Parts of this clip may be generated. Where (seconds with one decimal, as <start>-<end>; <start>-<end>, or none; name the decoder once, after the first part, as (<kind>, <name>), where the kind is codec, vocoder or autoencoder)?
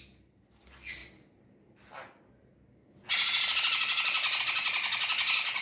none